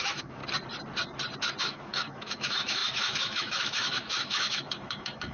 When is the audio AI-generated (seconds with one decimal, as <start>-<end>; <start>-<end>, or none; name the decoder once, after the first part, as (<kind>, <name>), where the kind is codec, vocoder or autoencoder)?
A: 0.0-0.4 (autoencoder, DAC-VAE); 1.6-5.3